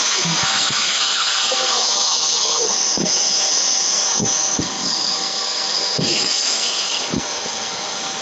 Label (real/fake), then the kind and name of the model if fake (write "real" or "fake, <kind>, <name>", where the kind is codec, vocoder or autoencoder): fake, codec, SNAC